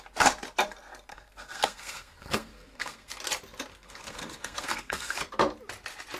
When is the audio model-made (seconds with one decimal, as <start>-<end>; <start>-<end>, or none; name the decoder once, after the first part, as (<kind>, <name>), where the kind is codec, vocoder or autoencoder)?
1.1-3.2 (codec, SNAC); 3.7-5.2